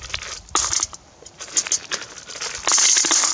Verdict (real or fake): real